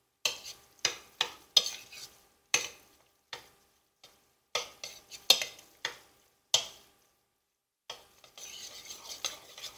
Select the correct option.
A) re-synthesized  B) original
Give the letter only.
B